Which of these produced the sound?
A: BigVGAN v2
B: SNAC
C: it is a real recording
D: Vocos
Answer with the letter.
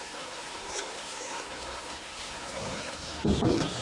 B